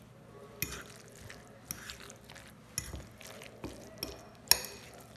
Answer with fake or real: real